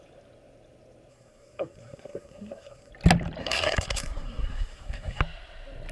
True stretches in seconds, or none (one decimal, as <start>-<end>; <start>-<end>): 0.0-1.1; 2.9-3.4; 5.2-5.9